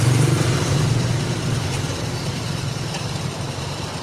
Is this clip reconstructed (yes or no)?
yes